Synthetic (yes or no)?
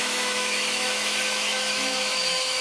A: yes